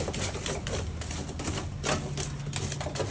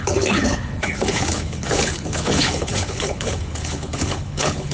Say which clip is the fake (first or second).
second